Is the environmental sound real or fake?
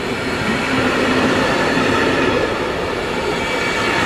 real